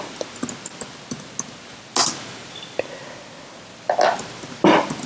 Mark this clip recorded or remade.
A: recorded